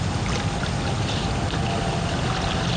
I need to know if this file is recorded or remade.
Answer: recorded